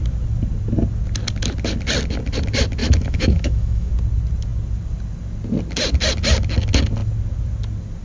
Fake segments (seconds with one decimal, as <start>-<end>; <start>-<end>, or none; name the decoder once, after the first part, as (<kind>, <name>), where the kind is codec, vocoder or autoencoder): 2.8-3.9 (autoencoder, DAC-VAE)